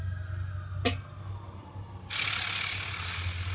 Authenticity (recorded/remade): recorded